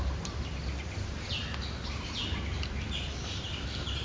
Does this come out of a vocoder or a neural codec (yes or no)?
no